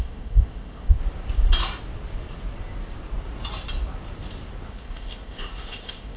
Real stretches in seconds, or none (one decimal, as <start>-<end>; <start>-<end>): 1.0-4.7